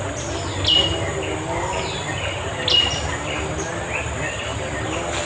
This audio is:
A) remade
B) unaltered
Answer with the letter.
B